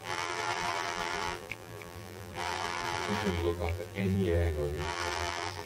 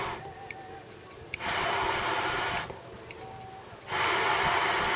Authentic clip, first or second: second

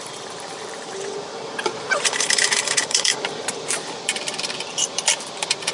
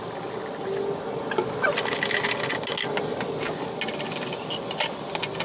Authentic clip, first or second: second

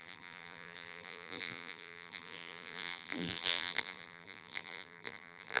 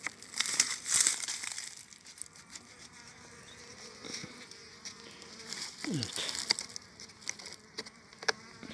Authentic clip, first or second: second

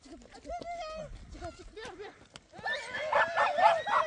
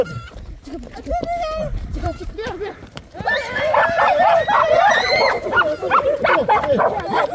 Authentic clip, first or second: first